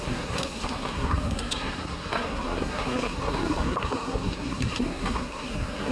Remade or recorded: remade